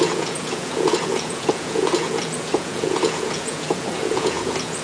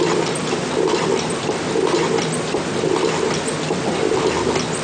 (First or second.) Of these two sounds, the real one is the second